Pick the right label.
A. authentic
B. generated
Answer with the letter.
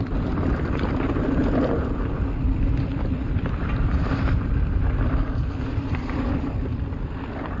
B